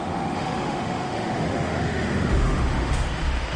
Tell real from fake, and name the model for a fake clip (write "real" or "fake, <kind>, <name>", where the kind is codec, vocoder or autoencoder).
fake, autoencoder, DAC-VAE